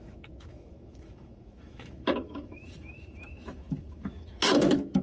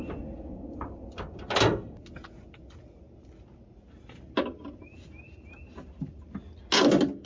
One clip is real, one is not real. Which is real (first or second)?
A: second